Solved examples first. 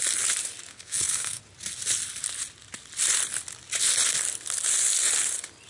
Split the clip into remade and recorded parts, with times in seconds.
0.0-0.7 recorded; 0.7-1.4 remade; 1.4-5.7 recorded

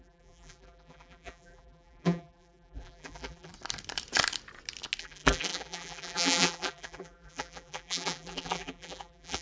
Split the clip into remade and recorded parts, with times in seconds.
0.0-3.5 remade; 3.5-5.0 recorded; 5.0-9.4 remade